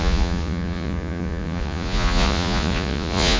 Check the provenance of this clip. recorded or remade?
remade